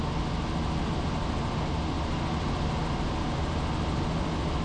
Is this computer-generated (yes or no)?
no